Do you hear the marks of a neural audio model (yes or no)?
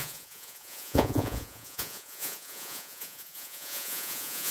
yes